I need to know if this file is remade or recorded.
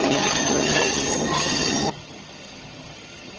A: remade